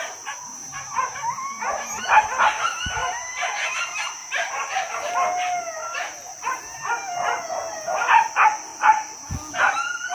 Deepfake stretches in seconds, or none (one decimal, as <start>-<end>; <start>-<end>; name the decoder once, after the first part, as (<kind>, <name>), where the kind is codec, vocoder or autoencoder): 4.2-5.1 (vocoder, BigVGAN v2); 5.8-6.6; 8.7-9.3